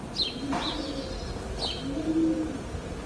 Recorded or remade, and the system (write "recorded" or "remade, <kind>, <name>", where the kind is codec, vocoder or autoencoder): recorded